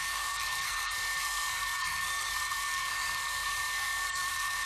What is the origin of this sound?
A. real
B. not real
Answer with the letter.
B